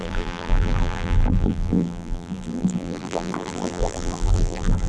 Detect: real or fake fake